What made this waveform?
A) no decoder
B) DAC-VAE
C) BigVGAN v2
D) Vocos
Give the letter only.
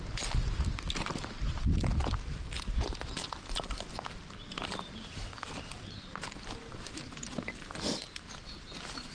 A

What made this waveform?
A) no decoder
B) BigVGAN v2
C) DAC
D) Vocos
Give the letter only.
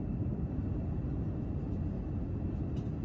A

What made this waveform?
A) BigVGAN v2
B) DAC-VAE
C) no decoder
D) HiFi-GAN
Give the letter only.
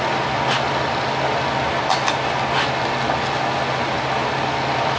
C